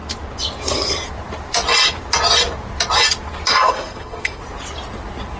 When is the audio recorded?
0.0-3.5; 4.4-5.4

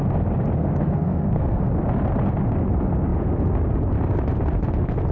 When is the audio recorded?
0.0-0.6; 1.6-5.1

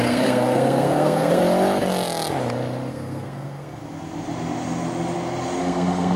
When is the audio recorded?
1.4-2.9; 3.8-5.6

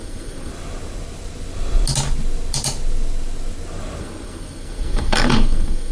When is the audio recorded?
0.5-4.0

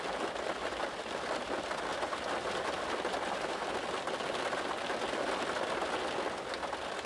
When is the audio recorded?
0.0-7.1